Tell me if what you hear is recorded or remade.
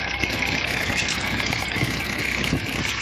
remade